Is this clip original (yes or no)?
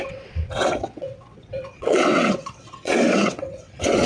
no